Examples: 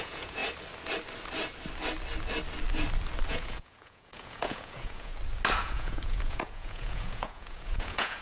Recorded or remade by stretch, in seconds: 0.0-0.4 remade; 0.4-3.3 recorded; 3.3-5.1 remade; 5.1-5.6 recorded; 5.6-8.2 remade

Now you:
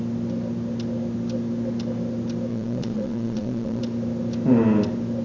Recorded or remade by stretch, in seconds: 0.0-2.5 recorded; 2.5-3.8 remade; 3.8-5.2 recorded

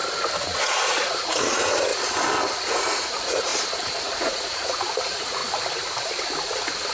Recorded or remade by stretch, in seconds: 0.0-0.6 recorded; 0.6-1.9 remade; 1.9-2.7 recorded; 2.7-3.5 remade; 3.5-4.0 recorded; 4.0-5.4 remade; 5.4-6.9 recorded